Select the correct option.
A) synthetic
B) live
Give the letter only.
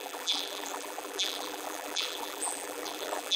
A